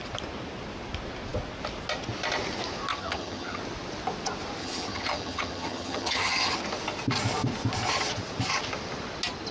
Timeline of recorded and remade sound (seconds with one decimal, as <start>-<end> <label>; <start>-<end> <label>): 0.0-2.9 recorded; 2.9-3.6 remade; 3.6-4.6 recorded; 4.6-6.5 remade; 6.5-9.5 recorded